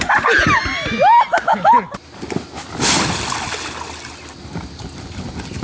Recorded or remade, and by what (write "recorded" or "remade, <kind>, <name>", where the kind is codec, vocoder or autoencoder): recorded